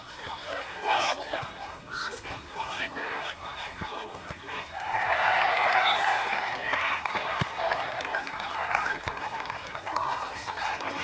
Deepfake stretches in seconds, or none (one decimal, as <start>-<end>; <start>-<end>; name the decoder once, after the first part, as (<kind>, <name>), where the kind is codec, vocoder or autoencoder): 0.0-11.0 (codec, SNAC)